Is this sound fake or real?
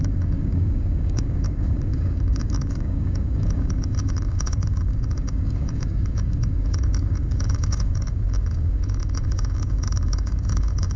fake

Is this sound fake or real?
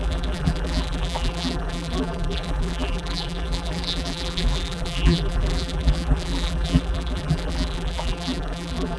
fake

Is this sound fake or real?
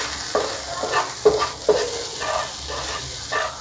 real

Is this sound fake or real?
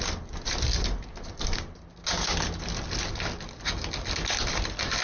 real